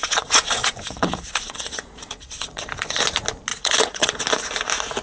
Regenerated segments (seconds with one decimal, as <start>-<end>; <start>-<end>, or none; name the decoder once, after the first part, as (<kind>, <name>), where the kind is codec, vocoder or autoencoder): 0.0-3.0 (vocoder, Vocos); 3.5-4.2